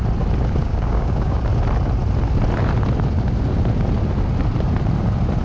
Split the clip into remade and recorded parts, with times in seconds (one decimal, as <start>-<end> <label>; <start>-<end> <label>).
0.0-0.6 recorded; 0.6-1.4 remade; 1.4-5.4 recorded